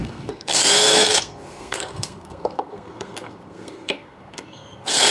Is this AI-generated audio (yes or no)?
yes